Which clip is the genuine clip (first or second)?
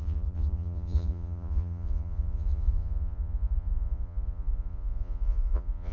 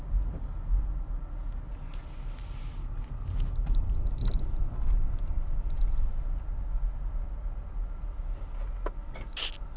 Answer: second